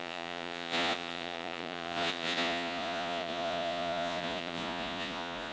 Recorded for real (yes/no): no